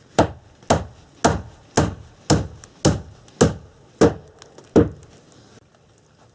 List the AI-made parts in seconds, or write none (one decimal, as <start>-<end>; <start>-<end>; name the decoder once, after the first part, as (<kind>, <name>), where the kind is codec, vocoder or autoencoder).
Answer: none